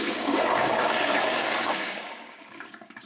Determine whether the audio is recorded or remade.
remade